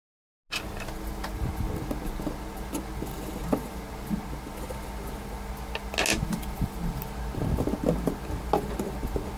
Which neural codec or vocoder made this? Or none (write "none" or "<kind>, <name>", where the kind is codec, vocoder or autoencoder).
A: none